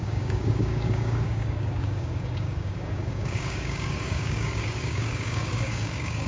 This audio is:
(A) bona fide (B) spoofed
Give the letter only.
B